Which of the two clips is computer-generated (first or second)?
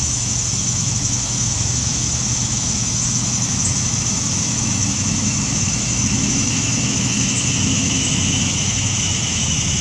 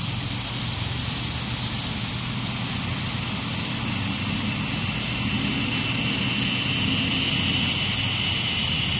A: first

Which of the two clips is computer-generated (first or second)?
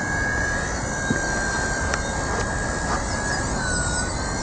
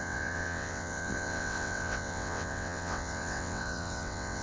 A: second